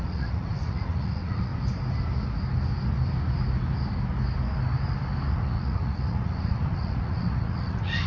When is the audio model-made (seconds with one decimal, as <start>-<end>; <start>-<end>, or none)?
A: 0.0-1.5; 5.3-8.1